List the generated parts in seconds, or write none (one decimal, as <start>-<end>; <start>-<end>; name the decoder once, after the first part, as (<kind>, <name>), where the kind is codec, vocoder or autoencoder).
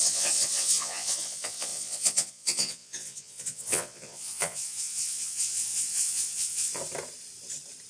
0.0-6.8 (vocoder, Vocos)